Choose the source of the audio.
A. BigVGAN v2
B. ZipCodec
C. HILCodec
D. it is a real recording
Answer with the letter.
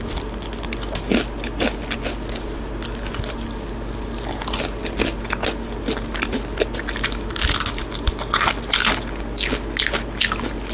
D